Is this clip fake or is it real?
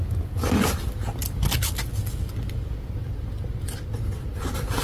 real